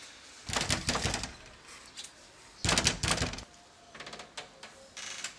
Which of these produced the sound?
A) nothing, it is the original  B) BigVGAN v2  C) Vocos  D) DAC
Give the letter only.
A